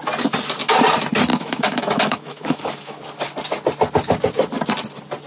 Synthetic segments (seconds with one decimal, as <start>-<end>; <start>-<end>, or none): 1.3-3.0